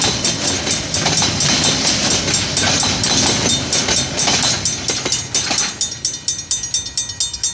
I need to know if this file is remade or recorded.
recorded